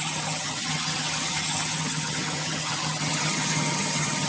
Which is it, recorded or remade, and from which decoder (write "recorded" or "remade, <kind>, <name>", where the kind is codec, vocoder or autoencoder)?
remade, vocoder, HiFi-GAN